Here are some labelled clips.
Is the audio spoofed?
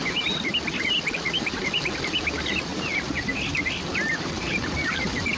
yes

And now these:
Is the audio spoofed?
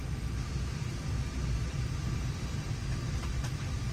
no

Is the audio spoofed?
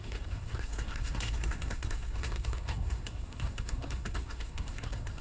yes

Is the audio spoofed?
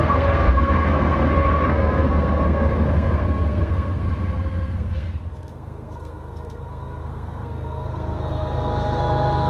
yes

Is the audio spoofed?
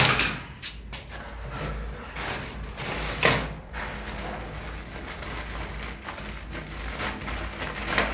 no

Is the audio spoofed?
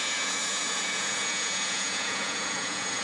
yes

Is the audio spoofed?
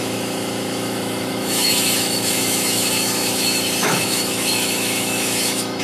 yes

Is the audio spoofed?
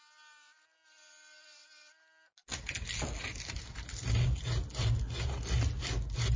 no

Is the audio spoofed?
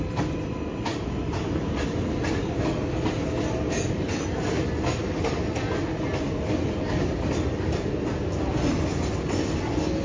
no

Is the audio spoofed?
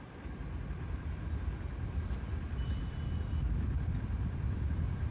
yes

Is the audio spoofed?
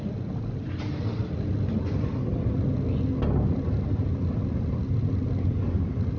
no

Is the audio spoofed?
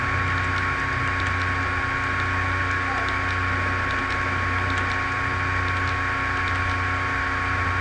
no